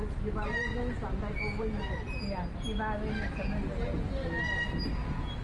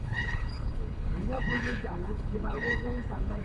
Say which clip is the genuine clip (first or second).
first